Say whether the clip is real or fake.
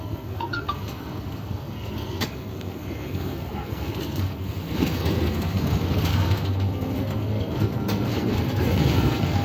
fake